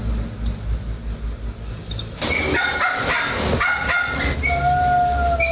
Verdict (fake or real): real